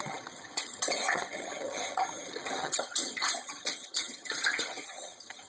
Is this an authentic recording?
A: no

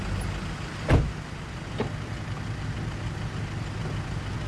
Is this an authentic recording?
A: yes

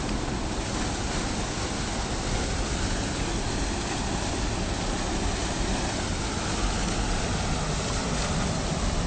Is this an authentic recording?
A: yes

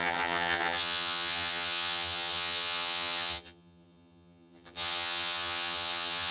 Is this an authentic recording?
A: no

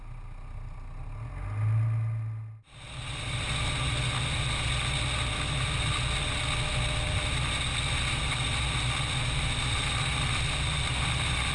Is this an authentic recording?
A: yes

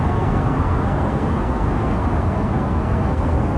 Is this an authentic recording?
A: no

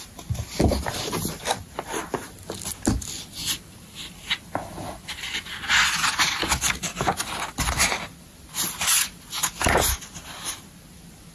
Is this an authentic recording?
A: yes